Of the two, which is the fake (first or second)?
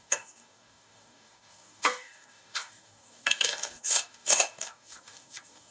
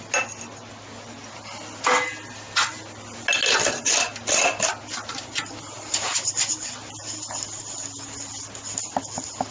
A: first